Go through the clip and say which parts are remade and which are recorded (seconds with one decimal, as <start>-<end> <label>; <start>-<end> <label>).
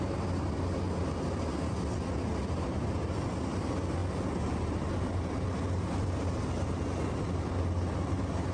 0.0-8.5 recorded